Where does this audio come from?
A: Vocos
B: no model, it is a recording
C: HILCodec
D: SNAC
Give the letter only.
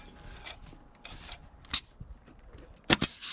B